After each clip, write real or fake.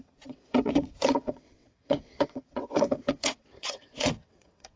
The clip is fake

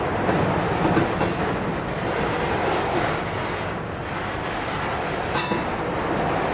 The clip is real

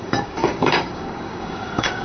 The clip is fake